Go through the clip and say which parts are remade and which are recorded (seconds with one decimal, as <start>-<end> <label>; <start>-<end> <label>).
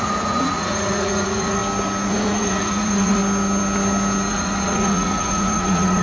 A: 0.0-1.6 remade; 1.6-2.1 recorded; 2.1-3.2 remade; 3.2-4.3 recorded; 4.3-6.0 remade